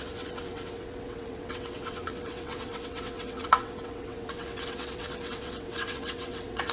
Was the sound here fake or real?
fake